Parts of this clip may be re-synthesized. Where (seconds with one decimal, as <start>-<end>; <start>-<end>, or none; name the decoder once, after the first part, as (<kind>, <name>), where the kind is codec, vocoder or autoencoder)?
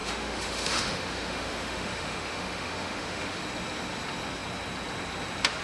0.0-3.4 (autoencoder, DAC-VAE)